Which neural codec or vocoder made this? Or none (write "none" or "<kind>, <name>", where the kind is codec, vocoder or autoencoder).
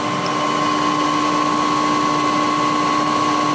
none